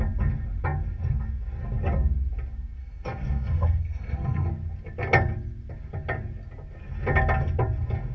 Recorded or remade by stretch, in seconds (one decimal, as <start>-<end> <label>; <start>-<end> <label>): 0.0-2.8 recorded; 2.8-4.5 remade; 4.5-8.1 recorded